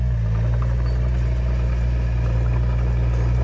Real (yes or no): yes